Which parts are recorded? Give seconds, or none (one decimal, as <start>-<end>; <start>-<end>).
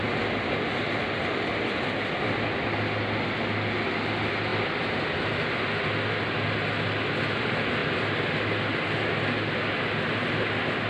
0.0-10.9